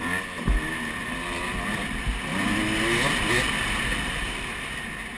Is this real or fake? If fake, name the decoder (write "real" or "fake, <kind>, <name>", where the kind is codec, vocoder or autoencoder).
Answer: real